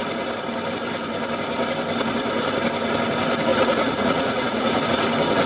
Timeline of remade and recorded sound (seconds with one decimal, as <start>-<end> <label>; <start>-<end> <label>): 0.0-3.5 recorded; 3.5-4.8 remade; 4.8-5.5 recorded